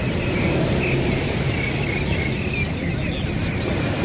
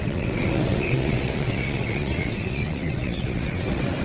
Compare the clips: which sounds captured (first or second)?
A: first